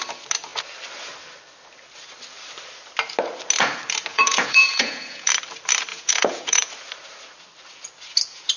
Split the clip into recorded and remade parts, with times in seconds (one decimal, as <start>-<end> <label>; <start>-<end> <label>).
0.0-4.1 recorded; 4.1-5.3 remade; 5.3-5.9 recorded; 5.9-6.7 remade; 6.7-8.6 recorded